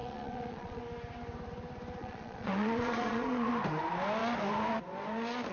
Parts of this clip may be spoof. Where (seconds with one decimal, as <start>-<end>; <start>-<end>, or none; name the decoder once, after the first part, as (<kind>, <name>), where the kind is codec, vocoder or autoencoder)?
0.0-0.8 (vocoder, Vocos); 2.0-3.5